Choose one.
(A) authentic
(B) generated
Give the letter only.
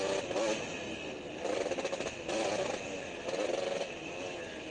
A